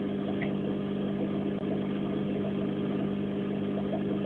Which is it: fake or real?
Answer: real